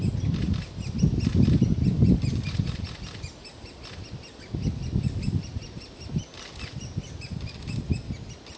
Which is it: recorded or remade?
recorded